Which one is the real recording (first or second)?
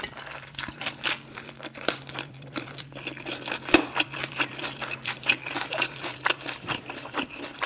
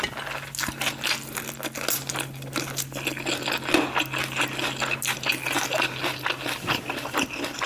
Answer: second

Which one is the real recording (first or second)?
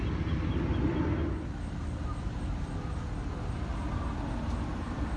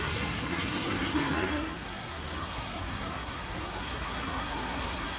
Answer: first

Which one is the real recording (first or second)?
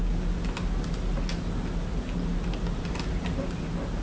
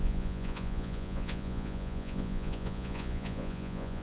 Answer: first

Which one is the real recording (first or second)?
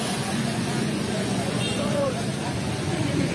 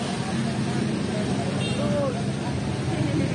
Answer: second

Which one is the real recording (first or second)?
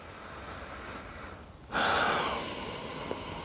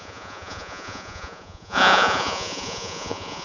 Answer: first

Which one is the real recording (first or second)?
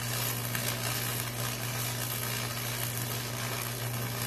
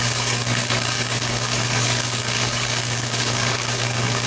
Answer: first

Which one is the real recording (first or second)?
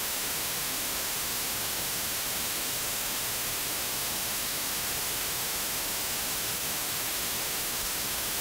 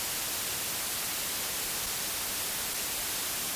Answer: second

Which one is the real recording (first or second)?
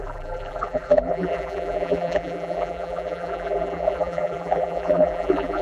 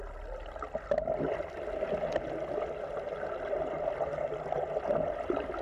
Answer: second